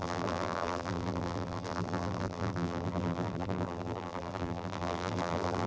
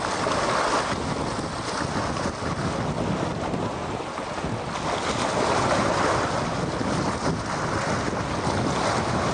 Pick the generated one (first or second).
first